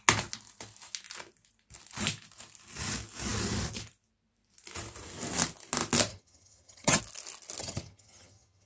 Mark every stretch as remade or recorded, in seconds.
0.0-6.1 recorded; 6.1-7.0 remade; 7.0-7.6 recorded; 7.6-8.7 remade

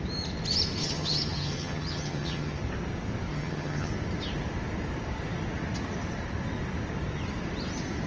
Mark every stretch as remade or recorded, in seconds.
0.0-0.8 recorded; 0.8-2.6 remade; 2.6-3.3 recorded; 3.3-3.9 remade; 3.9-8.1 recorded

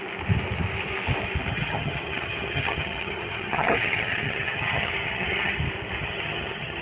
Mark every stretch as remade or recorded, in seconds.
0.0-1.5 recorded; 1.5-5.6 remade; 5.6-6.0 recorded; 6.0-6.8 remade

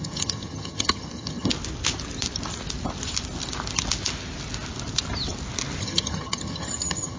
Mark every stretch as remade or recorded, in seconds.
0.0-1.5 remade; 1.5-5.8 recorded; 5.8-7.2 remade